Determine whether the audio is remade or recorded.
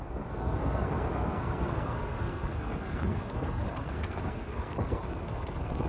remade